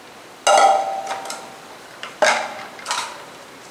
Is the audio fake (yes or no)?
no